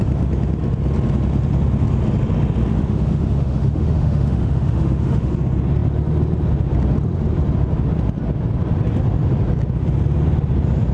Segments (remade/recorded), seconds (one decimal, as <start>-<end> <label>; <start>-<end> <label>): 0.0-2.7 recorded; 2.7-5.3 remade; 5.3-10.9 recorded